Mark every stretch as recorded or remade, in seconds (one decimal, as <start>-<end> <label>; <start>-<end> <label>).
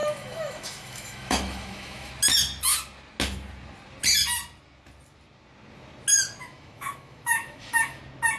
0.0-2.1 remade; 2.1-6.4 recorded; 6.4-8.0 remade; 8.0-8.4 recorded